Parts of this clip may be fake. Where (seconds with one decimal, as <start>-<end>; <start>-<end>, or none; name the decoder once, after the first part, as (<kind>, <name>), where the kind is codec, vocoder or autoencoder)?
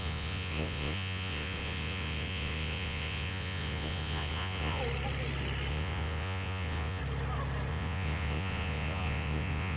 0.0-4.8 (vocoder, Vocos); 5.7-7.0; 7.7-9.8